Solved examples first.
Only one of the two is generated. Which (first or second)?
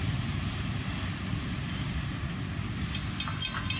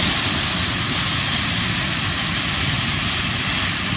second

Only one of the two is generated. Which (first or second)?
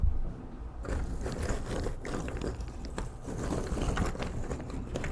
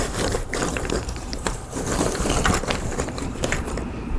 second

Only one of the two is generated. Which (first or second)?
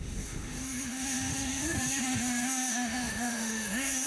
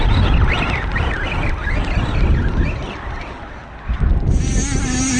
first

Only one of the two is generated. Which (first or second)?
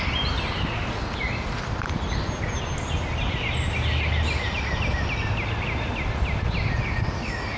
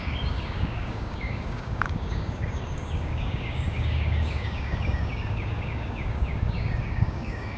second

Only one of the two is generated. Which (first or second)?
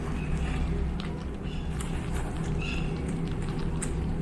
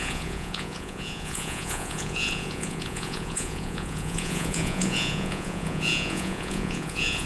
second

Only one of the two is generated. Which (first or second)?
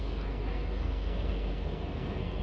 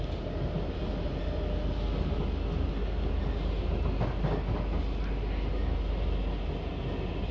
first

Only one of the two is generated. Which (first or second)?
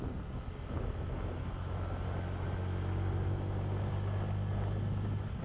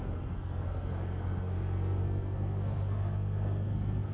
second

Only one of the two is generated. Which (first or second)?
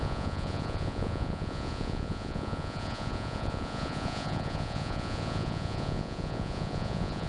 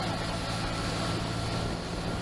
first